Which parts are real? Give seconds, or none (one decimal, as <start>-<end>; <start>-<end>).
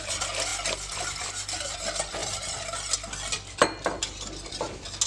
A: 0.0-5.1